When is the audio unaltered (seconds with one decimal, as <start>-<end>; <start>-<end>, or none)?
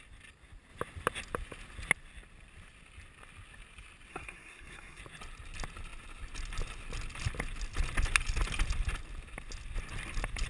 0.0-4.1; 5.0-10.5